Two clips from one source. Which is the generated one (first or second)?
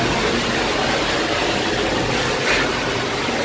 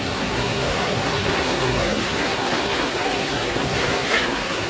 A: second